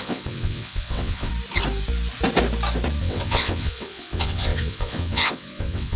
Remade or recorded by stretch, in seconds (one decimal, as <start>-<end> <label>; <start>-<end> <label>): 0.0-1.3 remade; 1.3-3.0 recorded; 3.0-6.0 remade